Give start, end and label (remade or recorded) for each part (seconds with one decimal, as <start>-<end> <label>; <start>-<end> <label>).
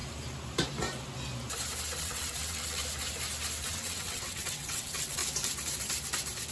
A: 0.0-2.0 recorded; 2.0-2.8 remade; 2.8-3.7 recorded; 3.7-5.2 remade; 5.2-6.5 recorded